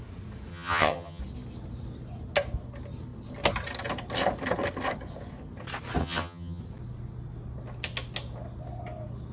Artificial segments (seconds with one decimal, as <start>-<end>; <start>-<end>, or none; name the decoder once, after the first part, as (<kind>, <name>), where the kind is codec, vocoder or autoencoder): 0.5-1.2 (vocoder, HiFi-GAN); 6.0-6.6